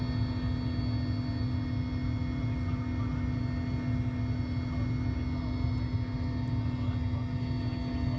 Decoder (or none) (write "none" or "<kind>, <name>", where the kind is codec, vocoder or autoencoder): none